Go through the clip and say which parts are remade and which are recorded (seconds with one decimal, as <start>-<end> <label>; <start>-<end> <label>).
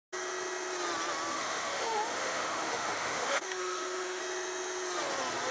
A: 0.0-1.3 recorded; 1.3-4.2 remade; 4.2-5.5 recorded